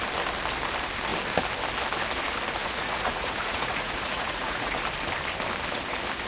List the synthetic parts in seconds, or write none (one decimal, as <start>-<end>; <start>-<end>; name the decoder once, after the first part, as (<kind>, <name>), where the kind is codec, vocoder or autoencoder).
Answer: 2.6-4.7 (vocoder, Vocos)